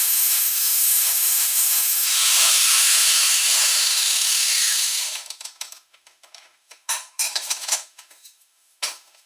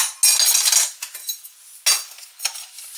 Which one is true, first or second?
second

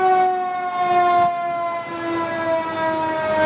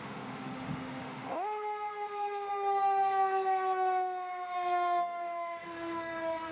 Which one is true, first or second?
first